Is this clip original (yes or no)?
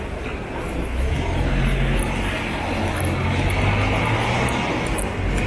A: yes